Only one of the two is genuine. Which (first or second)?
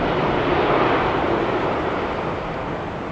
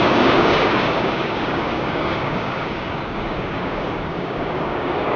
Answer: first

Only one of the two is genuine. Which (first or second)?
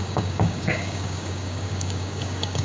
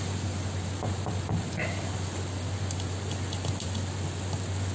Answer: second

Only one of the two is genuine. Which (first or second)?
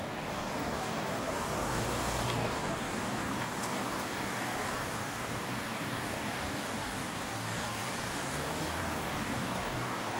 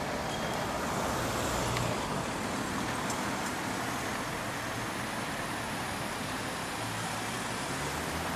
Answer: second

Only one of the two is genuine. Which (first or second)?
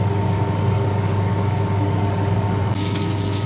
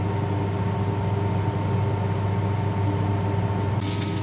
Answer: second